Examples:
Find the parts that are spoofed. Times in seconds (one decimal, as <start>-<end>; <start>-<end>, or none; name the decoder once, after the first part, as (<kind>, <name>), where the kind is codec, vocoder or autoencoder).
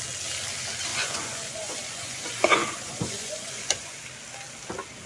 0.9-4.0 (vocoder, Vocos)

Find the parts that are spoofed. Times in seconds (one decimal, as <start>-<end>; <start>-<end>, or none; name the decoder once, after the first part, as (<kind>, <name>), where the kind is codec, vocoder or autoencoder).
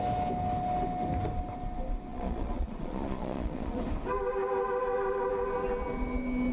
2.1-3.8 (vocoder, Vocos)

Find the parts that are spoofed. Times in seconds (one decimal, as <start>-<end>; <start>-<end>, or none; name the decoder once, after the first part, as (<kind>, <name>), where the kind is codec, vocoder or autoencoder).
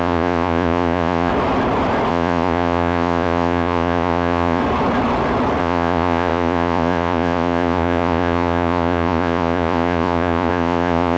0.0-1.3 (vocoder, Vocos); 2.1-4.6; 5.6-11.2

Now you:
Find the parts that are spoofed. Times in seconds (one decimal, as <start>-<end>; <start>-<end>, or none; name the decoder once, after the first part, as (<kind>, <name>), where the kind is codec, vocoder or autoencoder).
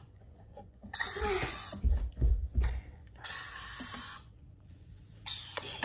0.0-3.5 (vocoder, Vocos); 4.0-5.8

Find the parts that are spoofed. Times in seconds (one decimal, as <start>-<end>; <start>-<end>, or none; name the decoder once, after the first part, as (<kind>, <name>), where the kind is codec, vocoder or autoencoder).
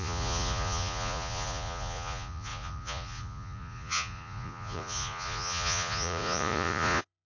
0.0-7.3 (vocoder, Vocos)